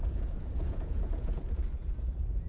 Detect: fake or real fake